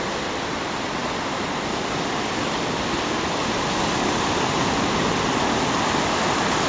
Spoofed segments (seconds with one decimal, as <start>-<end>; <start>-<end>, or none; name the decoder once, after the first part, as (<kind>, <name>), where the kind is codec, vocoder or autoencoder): none